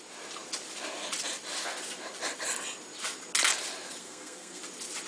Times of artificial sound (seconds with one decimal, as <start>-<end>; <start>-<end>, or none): 4.0-4.6